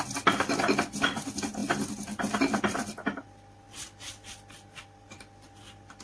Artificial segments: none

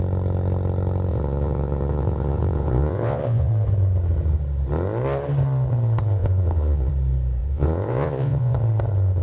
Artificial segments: 1.1-3.5 (vocoder, Vocos); 6.2-6.9; 7.4-8.6